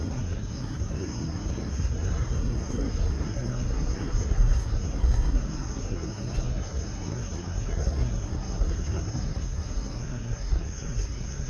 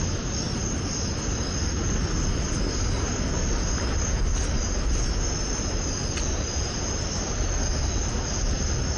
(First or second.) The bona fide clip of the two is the second